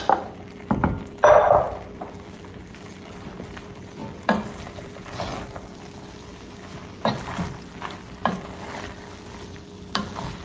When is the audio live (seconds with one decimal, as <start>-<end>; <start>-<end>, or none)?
6.3-7.7